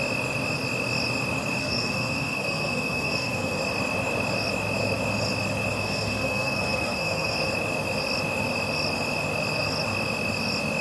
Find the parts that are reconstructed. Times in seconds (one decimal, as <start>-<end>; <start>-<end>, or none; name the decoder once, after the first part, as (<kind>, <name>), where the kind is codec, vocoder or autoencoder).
1.6-3.6 (codec, SNAC); 5.8-7.5